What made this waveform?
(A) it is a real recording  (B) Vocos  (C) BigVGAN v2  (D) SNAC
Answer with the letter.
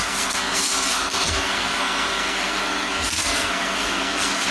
D